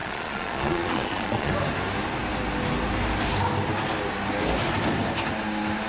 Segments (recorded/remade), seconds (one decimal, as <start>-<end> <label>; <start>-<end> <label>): 0.0-1.5 remade; 1.5-5.9 recorded